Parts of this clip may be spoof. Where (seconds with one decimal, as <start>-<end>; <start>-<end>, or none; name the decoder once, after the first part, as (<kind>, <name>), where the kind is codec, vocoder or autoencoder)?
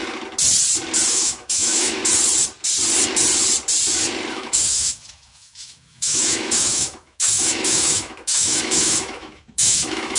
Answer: 1.1-2.0 (autoencoder, DAC-VAE); 4.3-10.2